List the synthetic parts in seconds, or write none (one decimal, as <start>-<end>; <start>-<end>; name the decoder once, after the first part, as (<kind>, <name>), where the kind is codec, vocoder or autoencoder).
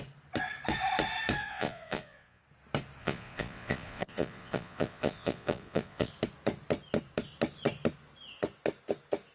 1.4-2.4 (vocoder, Vocos); 3.0-6.1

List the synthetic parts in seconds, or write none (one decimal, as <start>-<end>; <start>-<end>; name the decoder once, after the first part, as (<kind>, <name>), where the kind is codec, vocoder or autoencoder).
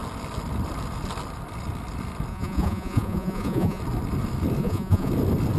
2.3-3.8 (vocoder, Vocos); 4.6-5.1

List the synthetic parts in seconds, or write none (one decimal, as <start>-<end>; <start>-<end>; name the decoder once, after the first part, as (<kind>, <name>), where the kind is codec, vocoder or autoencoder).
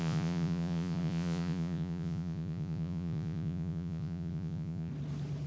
0.0-4.9 (vocoder, Vocos)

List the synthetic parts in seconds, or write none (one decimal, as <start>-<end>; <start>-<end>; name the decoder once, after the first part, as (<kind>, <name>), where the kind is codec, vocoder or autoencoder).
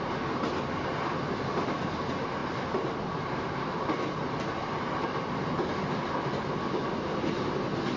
none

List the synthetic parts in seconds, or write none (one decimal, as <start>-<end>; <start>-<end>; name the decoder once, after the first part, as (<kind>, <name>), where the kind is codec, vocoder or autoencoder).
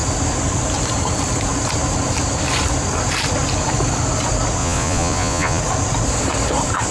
4.6-5.6 (vocoder, Vocos)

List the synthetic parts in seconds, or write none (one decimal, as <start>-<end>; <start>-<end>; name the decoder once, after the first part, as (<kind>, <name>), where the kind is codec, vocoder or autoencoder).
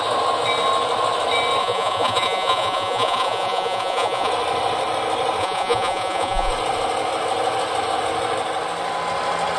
1.6-4.3 (vocoder, Vocos); 5.4-6.5